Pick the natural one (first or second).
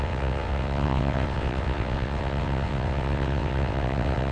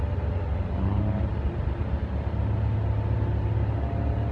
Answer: second